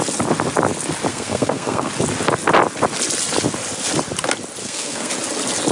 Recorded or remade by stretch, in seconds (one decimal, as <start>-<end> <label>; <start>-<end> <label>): 0.0-1.1 recorded; 1.1-1.9 remade; 1.9-4.6 recorded; 4.6-5.1 remade; 5.1-5.7 recorded